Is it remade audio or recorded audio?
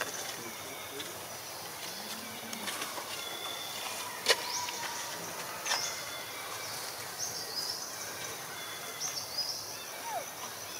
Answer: recorded